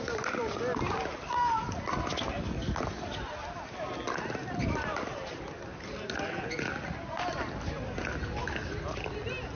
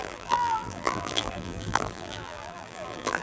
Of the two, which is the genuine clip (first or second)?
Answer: first